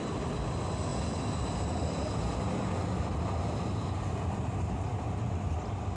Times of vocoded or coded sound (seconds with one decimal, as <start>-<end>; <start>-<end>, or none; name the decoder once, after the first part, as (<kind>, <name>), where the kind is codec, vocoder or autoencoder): none